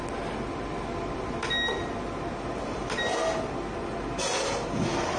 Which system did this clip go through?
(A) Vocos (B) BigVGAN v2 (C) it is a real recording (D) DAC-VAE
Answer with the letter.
C